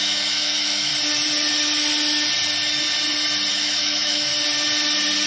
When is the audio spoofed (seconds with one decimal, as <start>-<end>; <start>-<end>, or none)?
0.0-0.9; 3.5-4.3